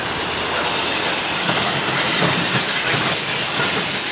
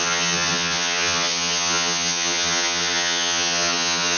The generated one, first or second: second